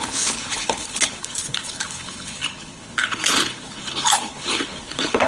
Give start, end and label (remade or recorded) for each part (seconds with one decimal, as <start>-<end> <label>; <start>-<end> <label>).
0.0-5.3 remade